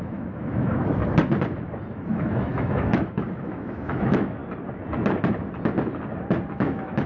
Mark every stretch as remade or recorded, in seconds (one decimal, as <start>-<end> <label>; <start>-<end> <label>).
0.0-1.0 remade; 1.0-1.9 recorded; 1.9-4.4 remade; 4.4-6.5 recorded; 6.5-7.1 remade